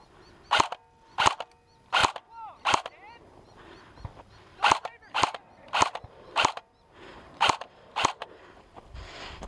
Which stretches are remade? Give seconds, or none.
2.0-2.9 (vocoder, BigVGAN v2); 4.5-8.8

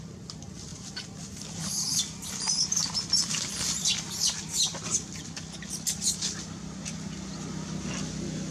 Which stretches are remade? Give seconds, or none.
0.7-5.2 (vocoder, BigVGAN v2)

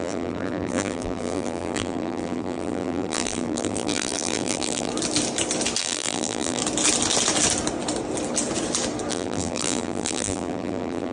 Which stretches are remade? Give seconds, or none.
0.0-4.9 (vocoder, BigVGAN v2); 5.8-6.6; 9.1-11.1

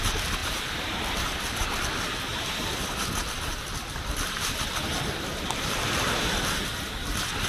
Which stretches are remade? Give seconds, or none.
0.4-1.7 (vocoder, BigVGAN v2); 2.3-6.8